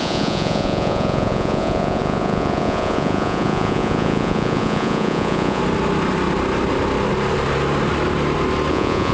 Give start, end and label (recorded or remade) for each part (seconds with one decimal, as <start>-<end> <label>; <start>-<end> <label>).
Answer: 0.0-5.6 remade; 5.6-8.7 recorded; 8.7-9.1 remade